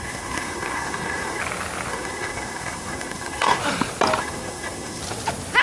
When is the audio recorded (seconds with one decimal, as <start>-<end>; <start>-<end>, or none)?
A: 1.4-1.9; 3.6-4.2; 5.0-5.6